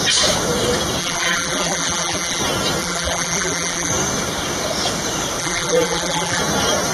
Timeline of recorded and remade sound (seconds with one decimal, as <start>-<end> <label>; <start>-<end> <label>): 0.0-1.0 recorded; 1.0-2.4 remade; 2.4-2.8 recorded; 2.8-3.9 remade; 3.9-5.4 recorded; 5.4-6.4 remade; 6.4-6.9 recorded